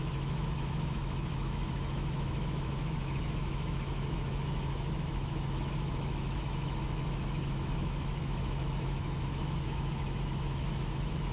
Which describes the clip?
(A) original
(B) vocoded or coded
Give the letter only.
B